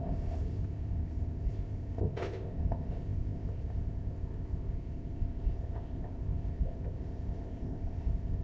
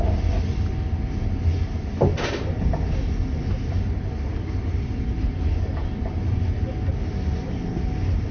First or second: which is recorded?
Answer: second